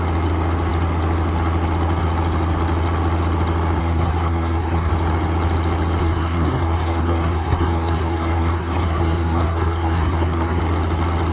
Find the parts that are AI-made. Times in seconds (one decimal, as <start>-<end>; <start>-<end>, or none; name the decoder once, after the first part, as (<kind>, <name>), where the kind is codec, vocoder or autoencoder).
3.8-4.9 (codec, SNAC); 6.0-10.6